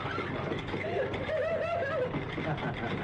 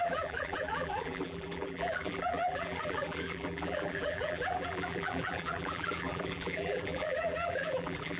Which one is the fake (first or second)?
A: second